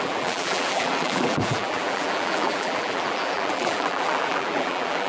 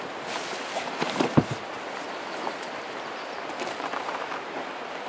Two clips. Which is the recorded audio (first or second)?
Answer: second